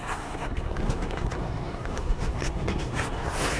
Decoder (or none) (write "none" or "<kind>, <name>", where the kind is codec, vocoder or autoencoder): codec, SNAC